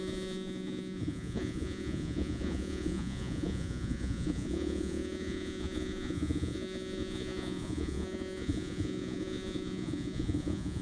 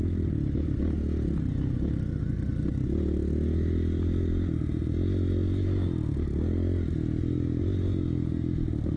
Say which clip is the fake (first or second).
first